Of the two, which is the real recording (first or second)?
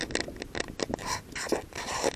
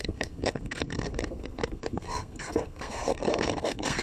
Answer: first